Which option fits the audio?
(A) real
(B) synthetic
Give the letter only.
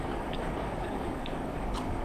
B